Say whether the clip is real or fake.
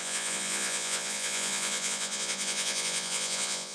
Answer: fake